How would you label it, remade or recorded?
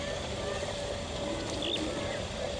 recorded